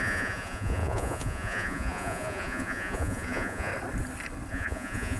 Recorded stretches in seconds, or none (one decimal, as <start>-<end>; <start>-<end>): 3.7-4.5